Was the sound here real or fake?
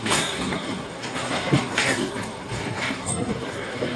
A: fake